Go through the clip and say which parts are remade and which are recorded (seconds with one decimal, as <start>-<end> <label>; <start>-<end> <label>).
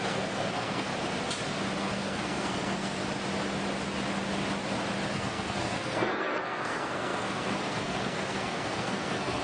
0.0-0.9 remade; 0.9-1.8 recorded; 1.8-3.0 remade; 3.0-5.1 recorded; 5.1-9.4 remade